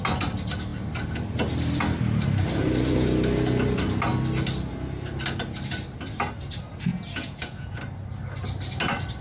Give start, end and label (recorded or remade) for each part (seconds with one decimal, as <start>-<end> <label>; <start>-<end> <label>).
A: 0.0-6.9 recorded; 6.9-7.7 remade; 7.7-9.2 recorded